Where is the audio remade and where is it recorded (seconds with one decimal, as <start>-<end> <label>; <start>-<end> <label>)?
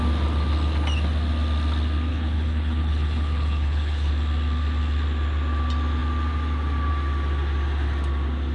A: 0.0-2.1 recorded; 2.1-4.1 remade; 4.1-8.5 recorded